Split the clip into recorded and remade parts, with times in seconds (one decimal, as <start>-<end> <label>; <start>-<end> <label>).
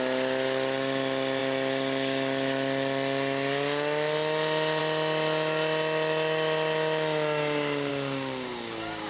0.0-7.9 recorded; 7.9-9.1 remade